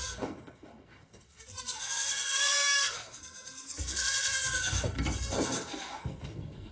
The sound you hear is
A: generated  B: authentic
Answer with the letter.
A